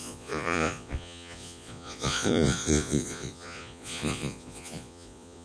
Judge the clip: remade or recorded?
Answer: remade